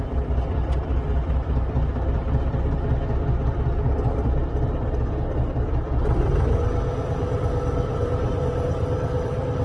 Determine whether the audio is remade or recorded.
remade